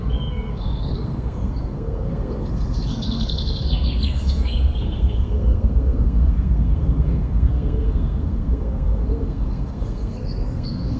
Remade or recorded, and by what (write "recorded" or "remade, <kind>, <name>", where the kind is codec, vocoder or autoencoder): remade, codec, SNAC